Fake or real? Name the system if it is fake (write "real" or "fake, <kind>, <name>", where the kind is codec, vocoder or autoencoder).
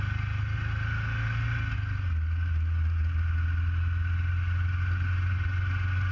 real